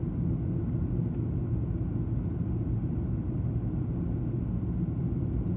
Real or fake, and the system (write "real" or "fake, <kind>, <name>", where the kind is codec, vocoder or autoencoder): real